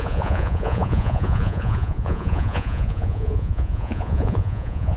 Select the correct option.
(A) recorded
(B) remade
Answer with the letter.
B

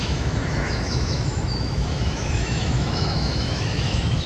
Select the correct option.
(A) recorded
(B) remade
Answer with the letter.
B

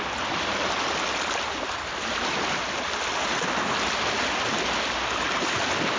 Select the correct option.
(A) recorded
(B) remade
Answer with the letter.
A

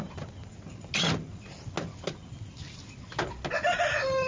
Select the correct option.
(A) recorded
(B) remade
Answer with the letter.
A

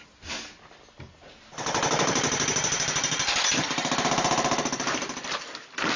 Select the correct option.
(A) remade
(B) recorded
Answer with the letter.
B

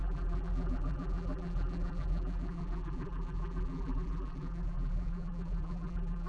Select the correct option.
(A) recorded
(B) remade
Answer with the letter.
B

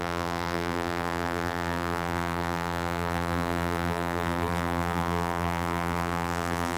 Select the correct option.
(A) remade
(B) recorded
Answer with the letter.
A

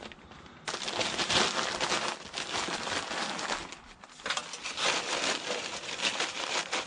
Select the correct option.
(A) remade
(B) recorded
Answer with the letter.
B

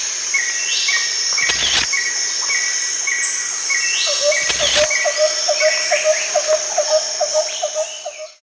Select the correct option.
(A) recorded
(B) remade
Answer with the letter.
A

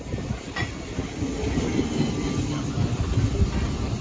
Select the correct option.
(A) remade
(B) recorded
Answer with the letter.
B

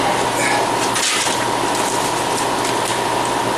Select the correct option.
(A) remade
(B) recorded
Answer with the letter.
B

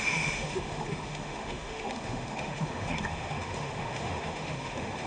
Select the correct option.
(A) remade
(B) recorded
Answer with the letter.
A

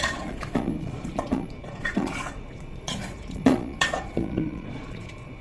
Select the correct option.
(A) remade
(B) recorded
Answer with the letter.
A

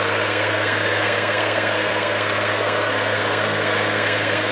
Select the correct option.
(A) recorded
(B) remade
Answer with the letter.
B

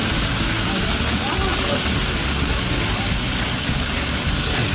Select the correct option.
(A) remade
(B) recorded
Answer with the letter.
B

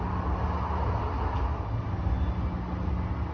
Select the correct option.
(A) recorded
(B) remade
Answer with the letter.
A